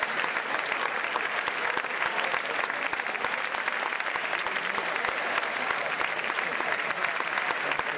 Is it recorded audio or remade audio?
recorded